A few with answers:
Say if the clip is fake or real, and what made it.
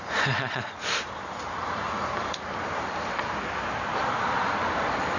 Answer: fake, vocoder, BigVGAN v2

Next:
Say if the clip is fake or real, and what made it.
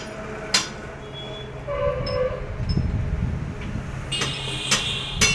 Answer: real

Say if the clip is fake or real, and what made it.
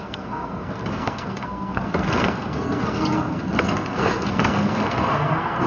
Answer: fake, codec, SNAC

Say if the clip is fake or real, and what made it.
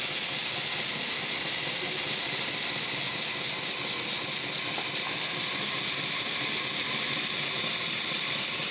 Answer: real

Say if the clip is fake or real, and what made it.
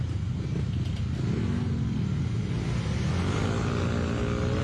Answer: real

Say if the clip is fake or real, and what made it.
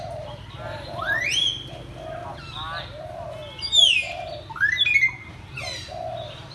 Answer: real